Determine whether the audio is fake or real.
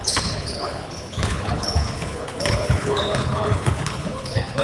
fake